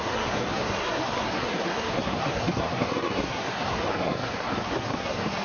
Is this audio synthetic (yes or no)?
yes